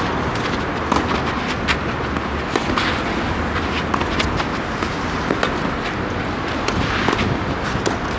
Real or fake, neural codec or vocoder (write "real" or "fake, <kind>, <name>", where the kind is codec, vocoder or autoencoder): real